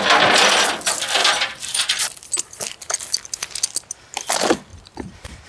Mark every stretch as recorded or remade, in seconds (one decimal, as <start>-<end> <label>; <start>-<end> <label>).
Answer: 0.0-1.2 recorded; 1.2-2.1 remade; 2.1-4.7 recorded; 4.7-5.5 remade